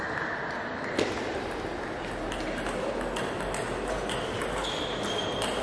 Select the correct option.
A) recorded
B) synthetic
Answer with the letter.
A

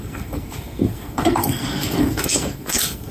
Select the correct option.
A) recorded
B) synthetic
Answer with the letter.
B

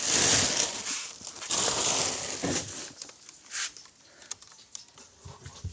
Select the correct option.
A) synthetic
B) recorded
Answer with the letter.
B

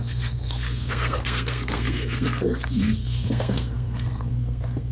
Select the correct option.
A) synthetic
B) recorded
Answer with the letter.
A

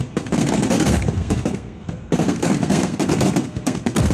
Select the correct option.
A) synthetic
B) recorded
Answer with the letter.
A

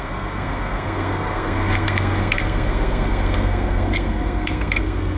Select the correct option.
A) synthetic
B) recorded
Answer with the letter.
A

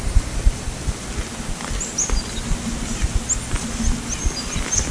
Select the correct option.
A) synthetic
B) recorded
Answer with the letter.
B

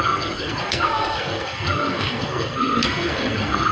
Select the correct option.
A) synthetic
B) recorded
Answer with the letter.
A